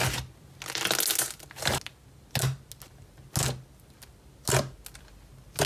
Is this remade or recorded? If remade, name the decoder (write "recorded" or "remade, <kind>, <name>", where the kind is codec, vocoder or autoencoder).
recorded